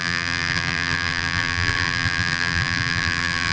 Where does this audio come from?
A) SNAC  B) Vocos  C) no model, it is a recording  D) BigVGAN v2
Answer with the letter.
D